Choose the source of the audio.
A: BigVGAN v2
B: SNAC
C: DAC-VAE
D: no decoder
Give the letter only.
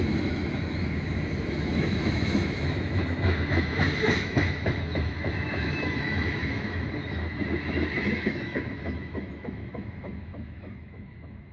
C